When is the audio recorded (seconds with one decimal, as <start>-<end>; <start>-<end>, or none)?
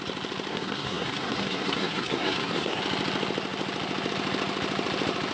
0.0-0.5; 2.8-5.3